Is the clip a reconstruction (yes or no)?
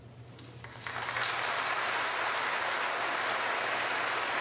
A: no